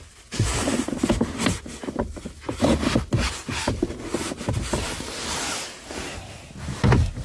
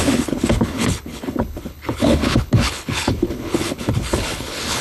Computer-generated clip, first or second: second